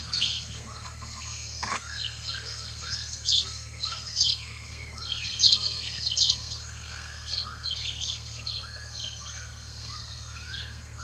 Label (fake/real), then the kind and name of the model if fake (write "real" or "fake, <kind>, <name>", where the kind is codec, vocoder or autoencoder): fake, codec, SNAC